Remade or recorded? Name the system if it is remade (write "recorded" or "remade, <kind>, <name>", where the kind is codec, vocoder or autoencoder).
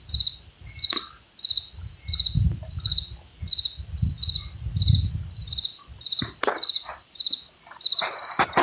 recorded